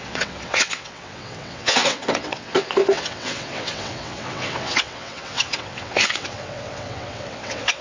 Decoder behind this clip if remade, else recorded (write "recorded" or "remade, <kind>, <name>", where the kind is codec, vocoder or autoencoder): remade, vocoder, WaveNeXt